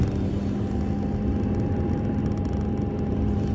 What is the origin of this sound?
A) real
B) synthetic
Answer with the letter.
A